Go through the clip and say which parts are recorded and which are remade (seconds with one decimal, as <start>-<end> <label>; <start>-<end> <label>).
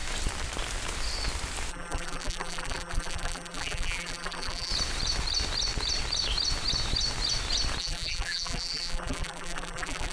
0.0-1.7 recorded; 1.7-4.7 remade; 4.7-7.8 recorded; 7.8-10.1 remade